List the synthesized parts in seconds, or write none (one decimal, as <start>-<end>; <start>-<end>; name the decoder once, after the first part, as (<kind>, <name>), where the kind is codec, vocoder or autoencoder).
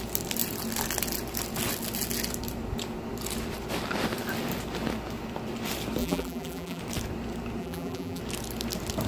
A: 6.0-6.8 (vocoder, BigVGAN v2); 7.6-8.2